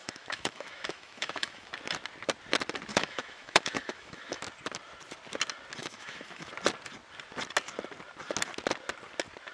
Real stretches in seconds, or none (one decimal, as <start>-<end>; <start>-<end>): 1.7-2.9; 4.4-5.8; 6.5-9.5